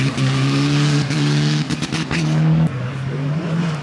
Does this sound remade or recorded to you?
remade